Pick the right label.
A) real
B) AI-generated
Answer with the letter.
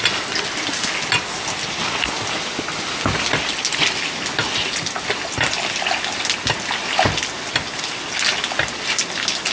A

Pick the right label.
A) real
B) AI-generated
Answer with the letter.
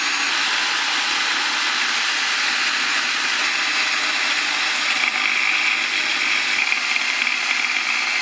A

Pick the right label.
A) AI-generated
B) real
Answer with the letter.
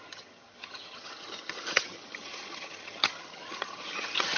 A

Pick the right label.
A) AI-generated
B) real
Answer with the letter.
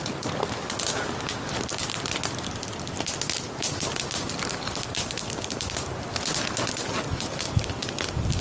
B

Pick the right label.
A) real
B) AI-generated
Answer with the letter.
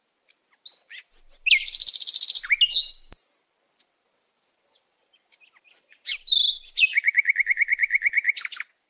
A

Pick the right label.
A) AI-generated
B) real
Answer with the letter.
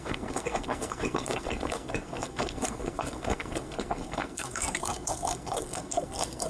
A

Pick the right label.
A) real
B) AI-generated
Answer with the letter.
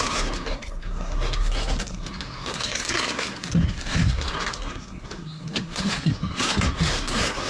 B